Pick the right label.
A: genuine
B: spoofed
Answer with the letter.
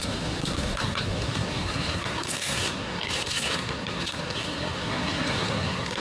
B